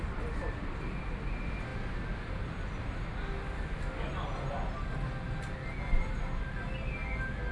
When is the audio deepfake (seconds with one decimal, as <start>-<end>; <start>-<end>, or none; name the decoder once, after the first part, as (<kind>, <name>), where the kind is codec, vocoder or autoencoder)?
0.0-1.7 (vocoder, BigVGAN v2); 5.8-7.0